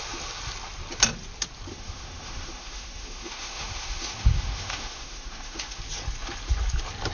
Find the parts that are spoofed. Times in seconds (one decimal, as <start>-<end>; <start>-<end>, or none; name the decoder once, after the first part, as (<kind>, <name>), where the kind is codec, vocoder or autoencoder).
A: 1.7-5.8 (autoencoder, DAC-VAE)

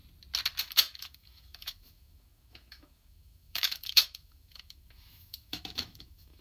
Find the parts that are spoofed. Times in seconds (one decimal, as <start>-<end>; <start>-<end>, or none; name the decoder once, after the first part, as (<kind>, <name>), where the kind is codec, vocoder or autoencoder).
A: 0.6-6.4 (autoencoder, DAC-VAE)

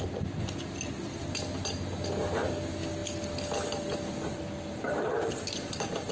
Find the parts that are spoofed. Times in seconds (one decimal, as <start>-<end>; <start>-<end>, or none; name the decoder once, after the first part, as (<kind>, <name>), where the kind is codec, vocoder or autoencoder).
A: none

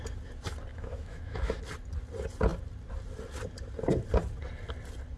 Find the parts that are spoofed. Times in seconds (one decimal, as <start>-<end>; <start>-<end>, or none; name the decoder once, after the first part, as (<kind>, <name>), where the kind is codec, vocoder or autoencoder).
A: 0.7-1.6 (autoencoder, DAC-VAE)

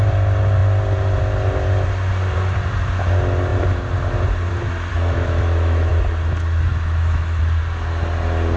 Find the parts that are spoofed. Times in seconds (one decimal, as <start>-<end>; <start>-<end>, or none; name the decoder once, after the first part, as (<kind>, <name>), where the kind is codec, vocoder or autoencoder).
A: 4.9-5.9 (autoencoder, DAC-VAE); 6.7-7.4

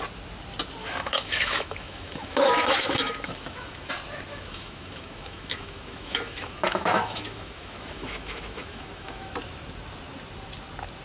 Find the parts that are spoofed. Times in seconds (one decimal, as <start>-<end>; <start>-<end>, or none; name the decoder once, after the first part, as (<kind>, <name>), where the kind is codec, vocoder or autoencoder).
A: 0.8-3.9 (autoencoder, DAC-VAE); 4.3-9.3